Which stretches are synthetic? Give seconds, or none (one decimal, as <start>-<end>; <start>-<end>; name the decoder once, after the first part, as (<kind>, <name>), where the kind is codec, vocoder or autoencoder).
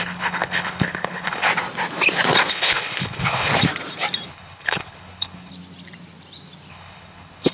0.0-1.5 (codec, HILCodec); 2.5-3.5; 4.3-5.5; 6.7-7.5